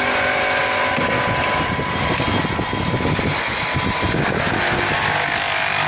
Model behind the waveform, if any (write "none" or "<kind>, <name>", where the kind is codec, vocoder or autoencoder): none